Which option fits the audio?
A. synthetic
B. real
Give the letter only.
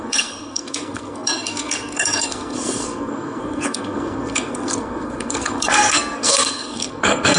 A